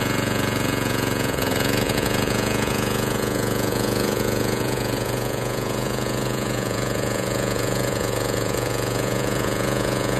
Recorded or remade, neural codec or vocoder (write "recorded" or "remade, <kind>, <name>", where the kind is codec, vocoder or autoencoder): remade, vocoder, Vocos